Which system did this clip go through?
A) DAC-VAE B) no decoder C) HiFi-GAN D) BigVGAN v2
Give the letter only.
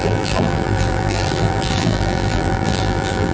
D